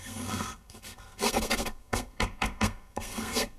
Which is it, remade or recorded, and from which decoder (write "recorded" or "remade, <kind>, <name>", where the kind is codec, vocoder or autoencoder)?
remade, codec, SNAC